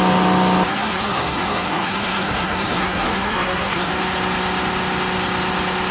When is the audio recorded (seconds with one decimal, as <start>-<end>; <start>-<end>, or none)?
0.0-0.7; 3.9-5.9

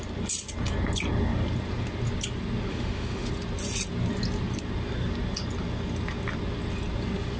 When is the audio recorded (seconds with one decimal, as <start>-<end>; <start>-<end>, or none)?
0.0-2.7; 3.3-7.4

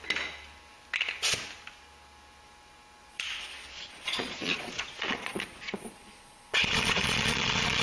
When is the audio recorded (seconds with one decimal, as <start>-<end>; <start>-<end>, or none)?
0.0-3.1

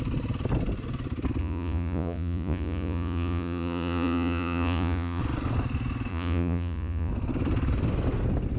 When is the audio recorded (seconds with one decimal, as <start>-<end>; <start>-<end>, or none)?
0.0-1.4; 5.2-6.1; 7.1-8.6

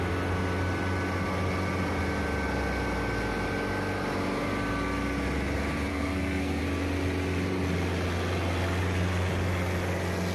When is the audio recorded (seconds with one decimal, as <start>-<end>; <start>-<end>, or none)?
0.0-5.9; 6.6-10.3

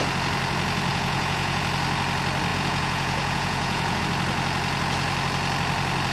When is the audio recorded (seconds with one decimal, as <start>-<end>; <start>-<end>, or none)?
0.0-0.9; 1.6-2.5; 4.0-6.1

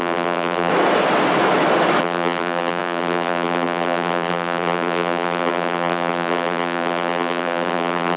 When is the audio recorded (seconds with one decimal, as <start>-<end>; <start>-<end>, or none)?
0.7-2.0